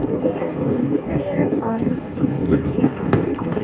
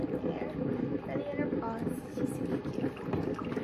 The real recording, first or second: second